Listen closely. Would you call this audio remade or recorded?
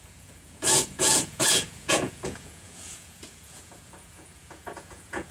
remade